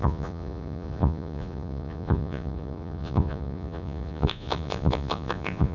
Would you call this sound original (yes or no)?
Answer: no